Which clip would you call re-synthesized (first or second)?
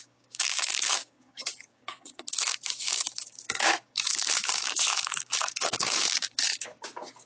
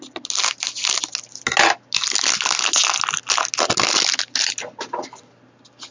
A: first